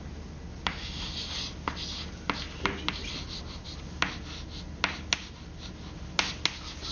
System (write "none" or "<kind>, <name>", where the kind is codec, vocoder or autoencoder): none